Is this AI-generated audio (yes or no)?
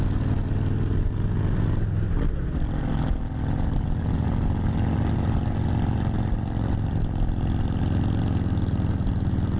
no